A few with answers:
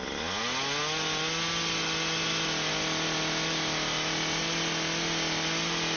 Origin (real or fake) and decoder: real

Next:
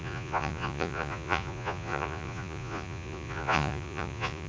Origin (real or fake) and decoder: fake, vocoder, Vocos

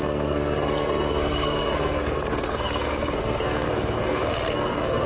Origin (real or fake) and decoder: fake, codec, SNAC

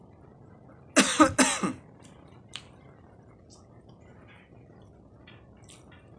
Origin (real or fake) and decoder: real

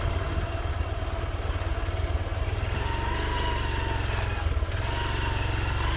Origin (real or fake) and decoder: real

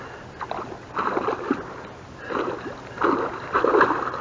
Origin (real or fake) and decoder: real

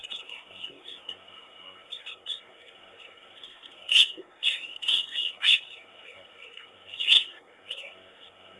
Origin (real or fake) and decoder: fake, codec, SNAC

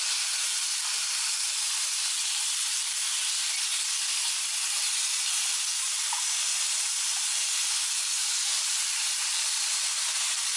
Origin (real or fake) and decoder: real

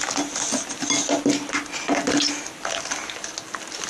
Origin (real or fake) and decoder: real